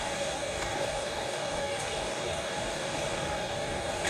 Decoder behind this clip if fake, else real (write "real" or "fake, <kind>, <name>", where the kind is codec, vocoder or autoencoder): fake, codec, DAC